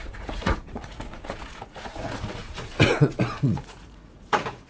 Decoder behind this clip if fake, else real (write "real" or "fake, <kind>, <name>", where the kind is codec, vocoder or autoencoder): fake, vocoder, Vocos